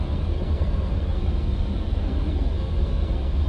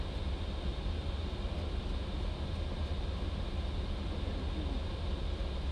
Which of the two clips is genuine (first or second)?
second